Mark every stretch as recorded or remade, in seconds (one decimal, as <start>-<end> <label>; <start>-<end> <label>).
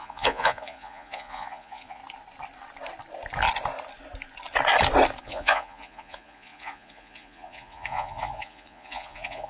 0.0-2.0 remade; 2.0-5.2 recorded; 5.2-9.5 remade